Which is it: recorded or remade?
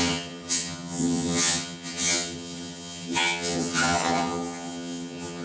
remade